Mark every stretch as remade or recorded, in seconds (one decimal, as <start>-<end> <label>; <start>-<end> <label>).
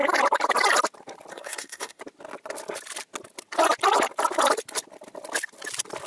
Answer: 0.0-1.3 recorded; 1.3-2.0 remade; 2.0-6.1 recorded